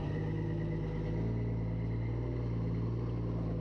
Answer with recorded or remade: recorded